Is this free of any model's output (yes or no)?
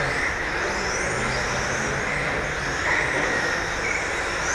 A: yes